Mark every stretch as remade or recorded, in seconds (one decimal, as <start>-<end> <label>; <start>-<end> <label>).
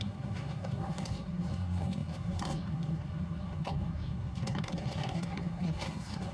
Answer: 0.0-6.3 remade